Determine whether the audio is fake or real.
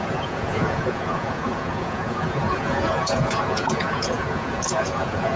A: fake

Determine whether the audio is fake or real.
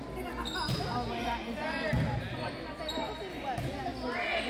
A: real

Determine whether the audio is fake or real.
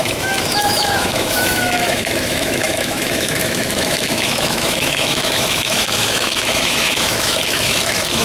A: fake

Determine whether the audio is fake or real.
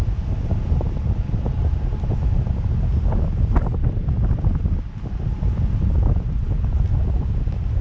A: real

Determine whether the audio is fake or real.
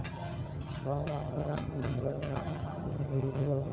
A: fake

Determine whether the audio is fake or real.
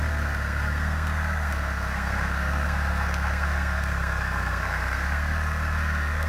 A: fake